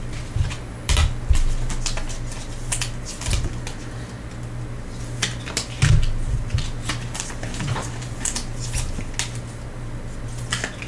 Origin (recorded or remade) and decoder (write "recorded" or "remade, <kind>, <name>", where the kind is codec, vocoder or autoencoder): recorded